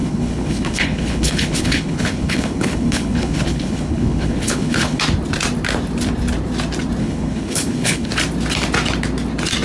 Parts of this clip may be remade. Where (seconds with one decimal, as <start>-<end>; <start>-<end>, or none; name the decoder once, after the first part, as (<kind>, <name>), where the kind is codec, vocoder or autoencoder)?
0.0-5.0 (codec, HILCodec); 7.0-8.1